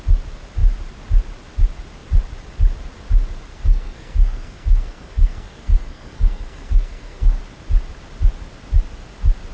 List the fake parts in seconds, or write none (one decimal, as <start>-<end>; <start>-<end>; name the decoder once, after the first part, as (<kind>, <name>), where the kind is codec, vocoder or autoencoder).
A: 3.5-7.4 (codec, SNAC)

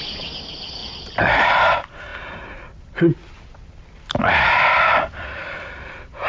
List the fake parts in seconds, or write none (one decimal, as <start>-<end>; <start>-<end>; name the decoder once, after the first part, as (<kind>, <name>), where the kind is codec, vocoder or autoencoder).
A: 0.8-1.5 (vocoder, BigVGAN v2); 2.1-5.1